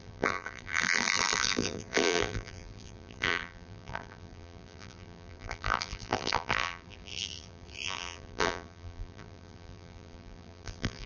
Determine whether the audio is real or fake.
fake